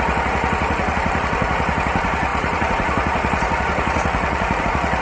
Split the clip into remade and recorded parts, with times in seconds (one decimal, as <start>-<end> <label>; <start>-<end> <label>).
0.0-5.0 remade